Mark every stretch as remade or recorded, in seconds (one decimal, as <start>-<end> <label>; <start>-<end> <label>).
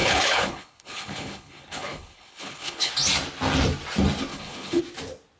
0.0-2.9 remade; 2.9-4.3 recorded; 4.3-4.8 remade; 4.8-5.4 recorded